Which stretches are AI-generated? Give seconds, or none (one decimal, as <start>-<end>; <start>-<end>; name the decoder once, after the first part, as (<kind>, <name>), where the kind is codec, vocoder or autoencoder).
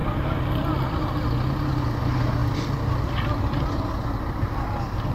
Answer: 2.4-3.1 (vocoder, BigVGAN v2)